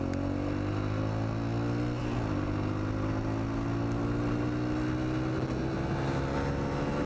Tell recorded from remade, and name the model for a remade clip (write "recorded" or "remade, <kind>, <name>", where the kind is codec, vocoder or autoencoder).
recorded